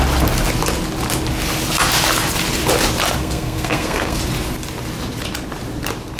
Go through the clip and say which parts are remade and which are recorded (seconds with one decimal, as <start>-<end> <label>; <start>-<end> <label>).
0.0-3.2 recorded; 3.2-4.2 remade; 4.2-6.2 recorded